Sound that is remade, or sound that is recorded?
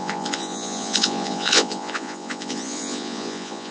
remade